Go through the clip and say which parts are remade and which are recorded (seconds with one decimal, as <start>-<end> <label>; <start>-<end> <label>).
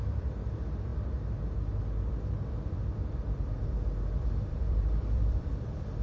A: 0.0-0.9 remade; 0.9-4.5 recorded; 4.5-6.0 remade